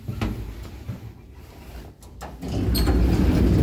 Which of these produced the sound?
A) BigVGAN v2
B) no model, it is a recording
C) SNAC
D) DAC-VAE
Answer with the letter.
B